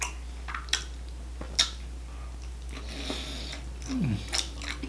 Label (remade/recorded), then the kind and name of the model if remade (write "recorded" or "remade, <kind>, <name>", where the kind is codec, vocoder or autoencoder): recorded